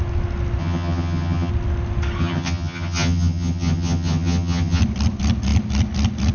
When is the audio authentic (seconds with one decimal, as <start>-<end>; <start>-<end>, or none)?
0.0-0.6; 1.5-2.2; 4.8-6.3